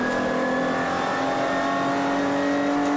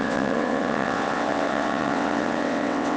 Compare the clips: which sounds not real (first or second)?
second